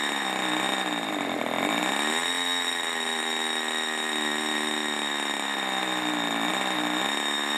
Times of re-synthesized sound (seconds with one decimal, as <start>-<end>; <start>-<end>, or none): none